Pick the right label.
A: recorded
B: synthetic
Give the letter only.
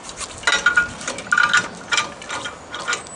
A